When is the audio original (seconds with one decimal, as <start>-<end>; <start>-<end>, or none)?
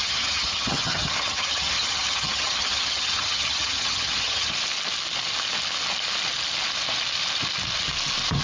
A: 4.5-8.4